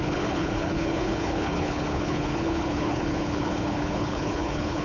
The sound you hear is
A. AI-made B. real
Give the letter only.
A